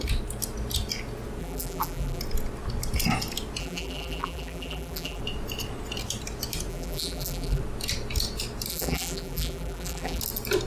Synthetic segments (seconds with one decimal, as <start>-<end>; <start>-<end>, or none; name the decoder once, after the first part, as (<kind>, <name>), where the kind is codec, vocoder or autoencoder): 1.4-2.2 (vocoder, BigVGAN v2); 3.6-5.2; 6.7-7.6; 8.7-10.2